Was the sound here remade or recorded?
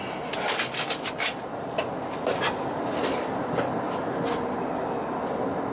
recorded